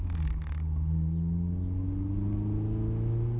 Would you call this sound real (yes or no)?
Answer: yes